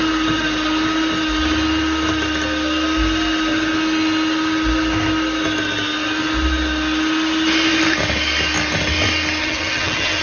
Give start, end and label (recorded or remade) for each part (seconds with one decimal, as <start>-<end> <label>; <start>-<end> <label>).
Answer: 0.0-9.4 recorded; 9.4-10.2 remade